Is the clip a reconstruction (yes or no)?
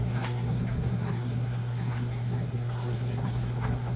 yes